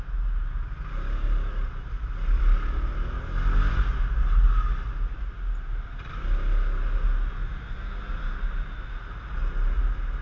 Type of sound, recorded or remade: recorded